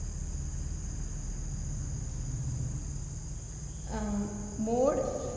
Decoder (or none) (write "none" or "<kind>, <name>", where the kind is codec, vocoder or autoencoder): none